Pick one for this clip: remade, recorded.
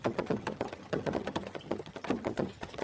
remade